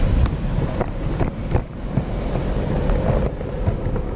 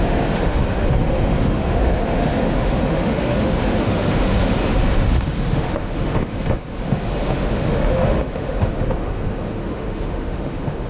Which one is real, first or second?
first